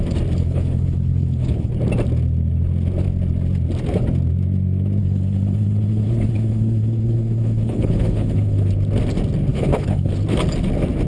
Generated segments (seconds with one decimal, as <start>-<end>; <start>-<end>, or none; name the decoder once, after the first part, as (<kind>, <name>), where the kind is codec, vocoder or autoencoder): 0.4-1.7 (codec, HILCodec); 5.0-8.7; 9.5-10.1